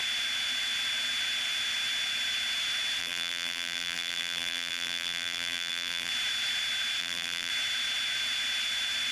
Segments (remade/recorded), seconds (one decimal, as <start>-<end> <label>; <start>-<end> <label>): 0.0-3.0 recorded; 3.0-6.1 remade; 6.1-7.0 recorded; 7.0-7.5 remade; 7.5-9.1 recorded